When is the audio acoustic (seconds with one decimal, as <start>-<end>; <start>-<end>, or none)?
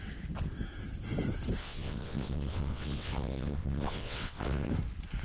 0.0-1.6; 4.7-5.2